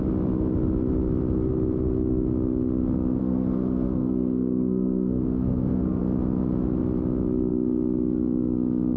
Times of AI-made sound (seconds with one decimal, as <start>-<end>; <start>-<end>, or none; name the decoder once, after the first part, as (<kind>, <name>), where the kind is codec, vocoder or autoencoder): 3.2-6.0 (codec, SNAC)